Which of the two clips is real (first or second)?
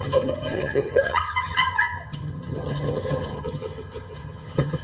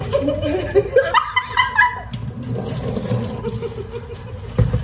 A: second